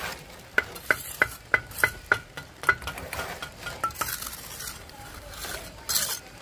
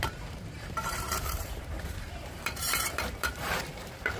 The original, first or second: first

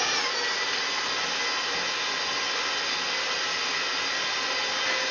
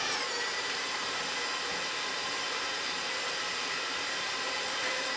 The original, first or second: first